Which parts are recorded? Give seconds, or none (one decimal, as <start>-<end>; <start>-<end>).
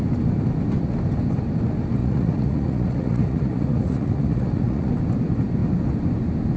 0.0-2.0; 4.9-6.6